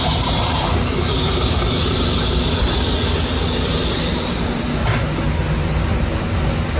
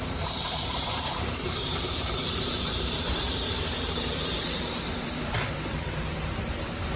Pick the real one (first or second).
first